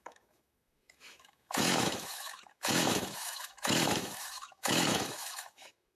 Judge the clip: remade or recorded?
remade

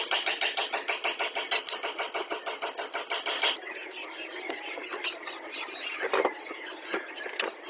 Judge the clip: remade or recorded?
recorded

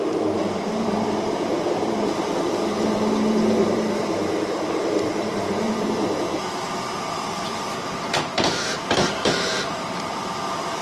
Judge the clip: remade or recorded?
remade